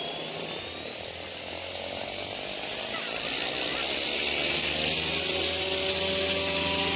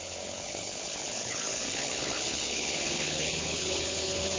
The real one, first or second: first